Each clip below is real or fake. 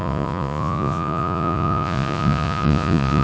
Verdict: fake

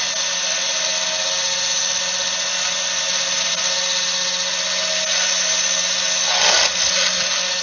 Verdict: real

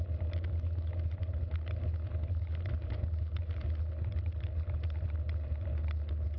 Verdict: real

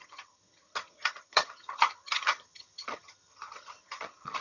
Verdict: fake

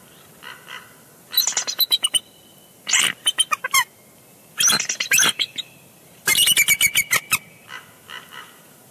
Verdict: fake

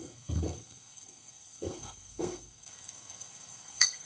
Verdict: fake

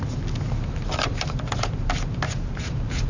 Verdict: real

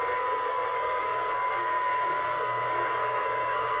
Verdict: fake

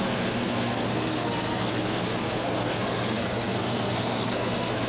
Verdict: fake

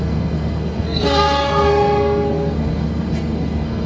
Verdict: fake